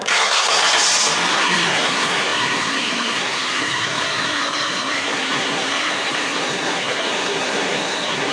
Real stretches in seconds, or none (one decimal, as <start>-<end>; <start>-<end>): 0.6-1.3